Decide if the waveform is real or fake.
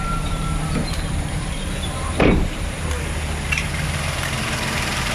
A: fake